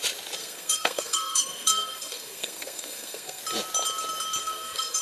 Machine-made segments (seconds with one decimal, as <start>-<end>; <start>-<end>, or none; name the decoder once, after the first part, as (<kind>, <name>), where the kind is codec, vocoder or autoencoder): 0.4-3.4 (codec, SNAC); 4.4-5.0